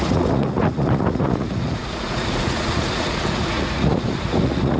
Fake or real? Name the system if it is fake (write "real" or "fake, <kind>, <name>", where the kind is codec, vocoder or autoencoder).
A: fake, vocoder, Vocos